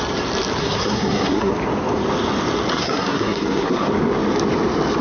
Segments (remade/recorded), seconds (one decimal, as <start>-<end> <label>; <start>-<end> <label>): 0.0-0.6 recorded; 0.6-1.5 remade; 1.5-2.7 recorded; 2.7-3.9 remade; 3.9-5.0 recorded